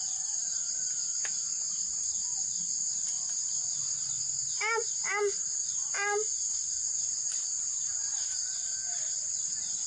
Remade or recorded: recorded